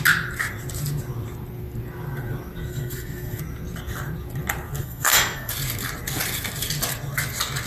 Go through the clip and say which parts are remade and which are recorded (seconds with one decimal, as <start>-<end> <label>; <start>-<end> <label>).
0.0-2.7 recorded; 2.7-3.4 remade; 3.4-4.8 recorded; 4.8-5.5 remade; 5.5-7.7 recorded